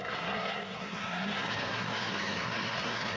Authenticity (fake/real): fake